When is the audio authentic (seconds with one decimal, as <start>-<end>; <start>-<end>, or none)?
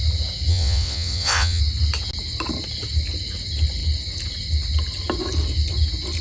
0.0-0.5; 1.6-6.2